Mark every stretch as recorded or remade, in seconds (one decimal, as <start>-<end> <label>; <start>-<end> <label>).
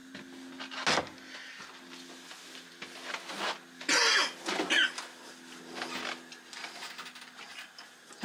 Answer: 0.0-8.2 recorded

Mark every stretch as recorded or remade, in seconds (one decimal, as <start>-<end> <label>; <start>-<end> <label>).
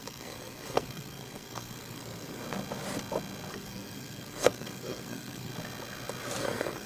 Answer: 0.0-2.4 remade; 2.4-3.5 recorded; 3.5-5.5 remade; 5.5-6.4 recorded; 6.4-6.9 remade